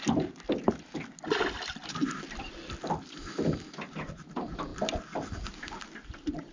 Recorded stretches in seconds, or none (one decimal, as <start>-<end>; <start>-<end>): 0.0-6.5